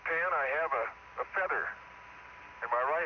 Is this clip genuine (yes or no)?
yes